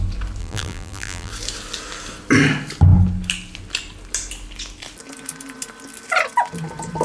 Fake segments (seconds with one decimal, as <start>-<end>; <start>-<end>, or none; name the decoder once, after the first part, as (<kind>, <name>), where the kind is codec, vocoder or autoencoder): 0.4-1.3 (vocoder, BigVGAN v2)